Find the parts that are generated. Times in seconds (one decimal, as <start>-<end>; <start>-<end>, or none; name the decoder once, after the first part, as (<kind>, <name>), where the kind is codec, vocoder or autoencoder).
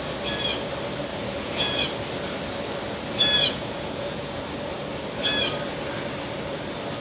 1.1-1.9 (vocoder, Vocos); 3.4-4.4